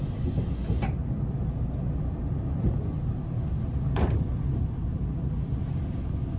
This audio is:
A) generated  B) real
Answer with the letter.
B